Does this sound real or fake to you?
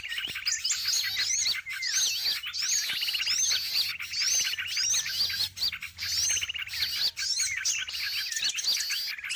real